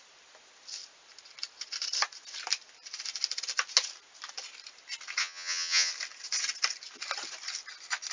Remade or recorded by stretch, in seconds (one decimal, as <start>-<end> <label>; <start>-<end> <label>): 0.0-5.2 recorded; 5.2-5.9 remade; 5.9-8.1 recorded